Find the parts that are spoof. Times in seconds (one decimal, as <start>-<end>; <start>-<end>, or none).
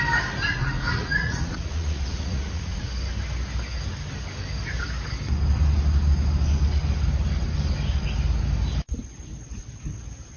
0.6-2.9